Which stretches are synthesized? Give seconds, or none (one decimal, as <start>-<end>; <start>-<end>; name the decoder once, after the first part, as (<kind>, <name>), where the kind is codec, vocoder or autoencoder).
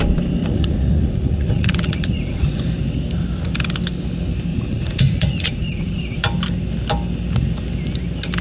0.4-2.6 (vocoder, Vocos); 4.5-6.2